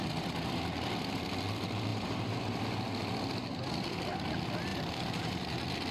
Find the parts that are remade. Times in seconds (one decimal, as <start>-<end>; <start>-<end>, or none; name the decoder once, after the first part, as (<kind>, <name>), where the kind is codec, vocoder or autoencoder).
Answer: 1.9-2.6 (vocoder, BigVGAN v2); 4.7-5.4